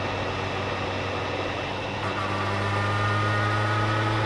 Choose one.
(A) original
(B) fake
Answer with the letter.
A